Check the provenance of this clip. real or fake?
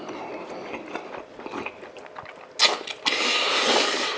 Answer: real